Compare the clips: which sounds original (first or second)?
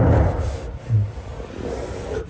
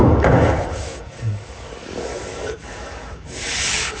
first